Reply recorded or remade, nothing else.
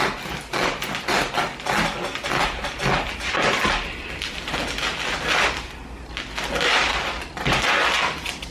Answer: recorded